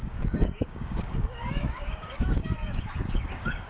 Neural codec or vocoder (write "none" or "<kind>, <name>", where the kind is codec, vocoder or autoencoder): codec, DAC